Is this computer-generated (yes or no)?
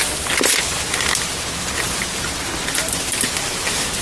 no